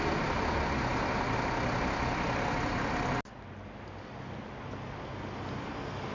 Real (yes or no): yes